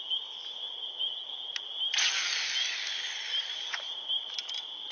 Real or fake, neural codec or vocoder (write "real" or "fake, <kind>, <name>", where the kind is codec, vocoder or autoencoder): real